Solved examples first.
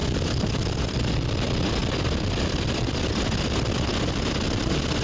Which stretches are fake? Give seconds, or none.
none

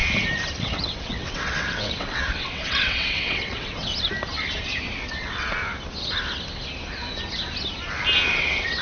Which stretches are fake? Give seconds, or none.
0.6-3.9 (vocoder, WaveNeXt); 4.9-5.6; 8.3-8.8

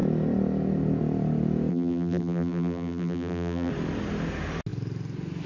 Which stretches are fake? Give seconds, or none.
1.7-3.7 (vocoder, BigVGAN v2)

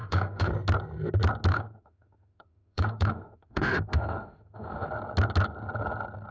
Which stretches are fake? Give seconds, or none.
0.0-0.5 (autoencoder, DAC-VAE); 1.5-4.9

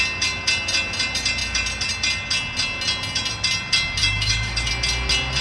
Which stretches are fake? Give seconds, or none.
4.0-4.7 (autoencoder, DAC-VAE)

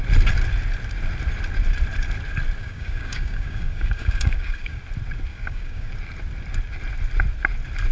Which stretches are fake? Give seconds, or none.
2.6-4.8 (codec, DAC); 5.3-5.9

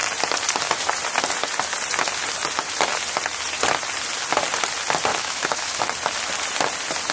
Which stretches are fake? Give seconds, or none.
5.1-5.8 (autoencoder, DAC-VAE)

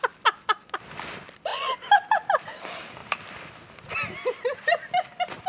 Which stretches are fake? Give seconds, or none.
none